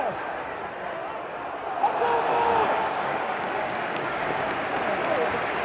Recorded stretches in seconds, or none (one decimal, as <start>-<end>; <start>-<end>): 0.0-2.3; 4.6-5.6